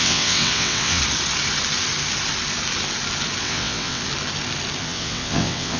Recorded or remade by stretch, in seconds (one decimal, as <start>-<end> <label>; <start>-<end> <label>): 0.0-1.0 remade; 1.0-3.4 recorded; 3.4-4.0 remade; 4.0-4.8 recorded; 4.8-5.8 remade